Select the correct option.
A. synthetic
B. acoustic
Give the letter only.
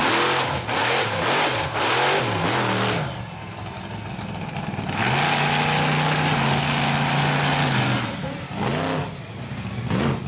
B